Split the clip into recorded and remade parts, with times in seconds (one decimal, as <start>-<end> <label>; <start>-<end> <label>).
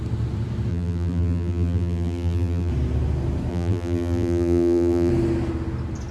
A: 0.0-0.7 recorded; 0.7-2.7 remade; 2.7-3.5 recorded; 3.5-5.1 remade; 5.1-6.1 recorded